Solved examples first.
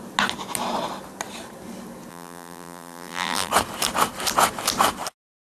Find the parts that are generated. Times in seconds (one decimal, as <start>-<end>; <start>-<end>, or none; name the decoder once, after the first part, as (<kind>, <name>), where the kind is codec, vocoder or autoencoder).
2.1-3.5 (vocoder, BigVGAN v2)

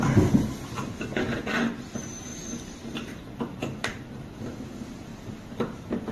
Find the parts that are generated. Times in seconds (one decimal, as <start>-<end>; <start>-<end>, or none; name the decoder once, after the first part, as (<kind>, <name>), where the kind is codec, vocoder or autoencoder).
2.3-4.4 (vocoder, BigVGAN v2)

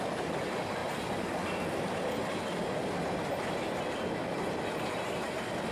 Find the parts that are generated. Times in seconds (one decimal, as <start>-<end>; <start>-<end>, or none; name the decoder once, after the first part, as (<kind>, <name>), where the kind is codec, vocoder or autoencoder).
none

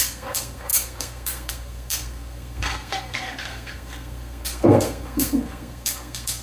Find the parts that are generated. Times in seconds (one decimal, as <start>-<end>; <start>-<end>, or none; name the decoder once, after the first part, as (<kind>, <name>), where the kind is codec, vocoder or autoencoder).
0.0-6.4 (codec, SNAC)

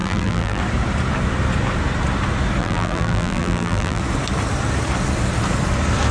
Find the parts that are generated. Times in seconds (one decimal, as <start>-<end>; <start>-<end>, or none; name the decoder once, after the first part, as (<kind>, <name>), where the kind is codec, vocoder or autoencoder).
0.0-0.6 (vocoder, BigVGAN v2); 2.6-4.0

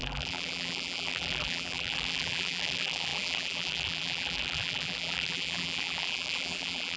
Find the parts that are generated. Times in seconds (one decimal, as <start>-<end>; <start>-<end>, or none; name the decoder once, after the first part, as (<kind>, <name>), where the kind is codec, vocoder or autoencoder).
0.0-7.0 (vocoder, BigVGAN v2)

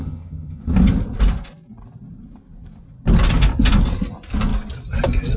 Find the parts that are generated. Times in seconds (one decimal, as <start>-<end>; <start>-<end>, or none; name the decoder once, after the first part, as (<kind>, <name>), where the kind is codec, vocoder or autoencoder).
0.0-0.6 (vocoder, HiFi-GAN)

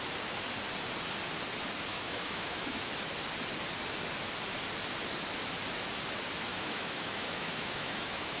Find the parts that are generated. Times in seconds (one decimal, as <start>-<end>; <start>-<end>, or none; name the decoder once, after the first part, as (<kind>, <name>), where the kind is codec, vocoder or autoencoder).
1.9-2.9 (autoencoder, DAC-VAE); 6.5-8.4